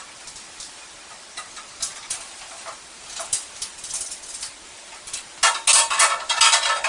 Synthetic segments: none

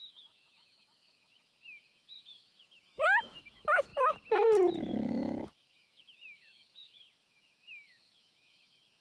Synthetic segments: 0.0-3.9 (autoencoder, DAC-VAE); 4.8-9.0